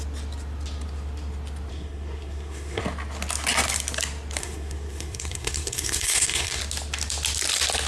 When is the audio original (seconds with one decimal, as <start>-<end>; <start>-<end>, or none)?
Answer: 0.0-1.7; 2.8-4.4; 6.6-7.9